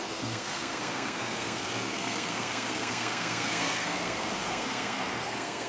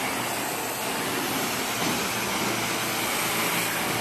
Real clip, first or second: second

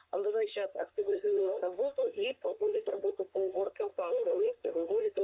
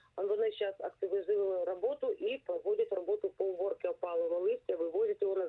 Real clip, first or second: second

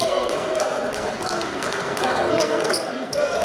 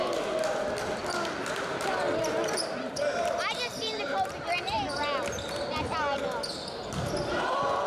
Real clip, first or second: second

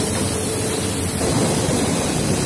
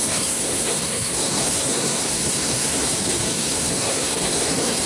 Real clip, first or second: first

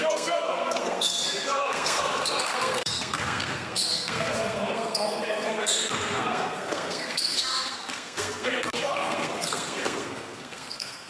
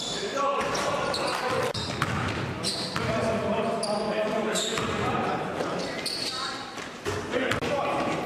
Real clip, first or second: second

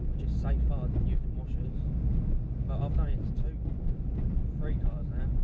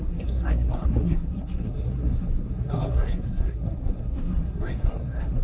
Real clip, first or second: first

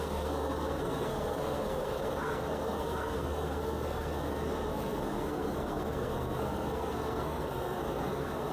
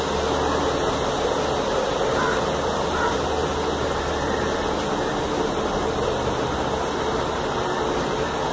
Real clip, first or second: second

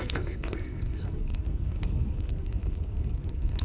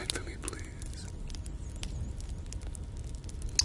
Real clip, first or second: second